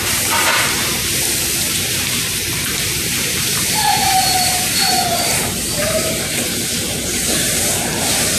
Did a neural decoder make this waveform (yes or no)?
yes